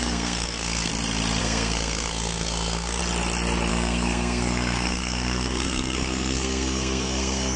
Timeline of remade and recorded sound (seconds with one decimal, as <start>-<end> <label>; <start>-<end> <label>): 0.0-0.9 remade; 0.9-1.4 recorded; 1.4-3.0 remade; 3.0-3.7 recorded; 3.7-7.6 remade